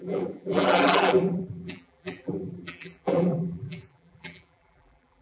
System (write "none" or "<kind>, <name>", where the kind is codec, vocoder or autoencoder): vocoder, BigVGAN v2